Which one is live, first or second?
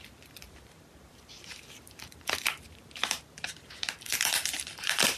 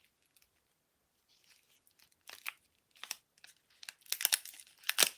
second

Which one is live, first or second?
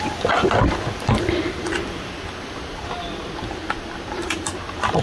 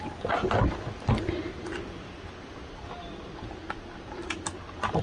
second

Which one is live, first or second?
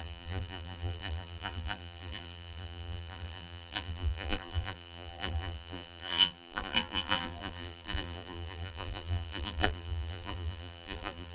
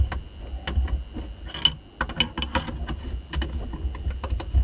second